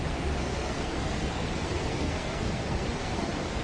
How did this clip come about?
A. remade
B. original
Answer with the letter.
A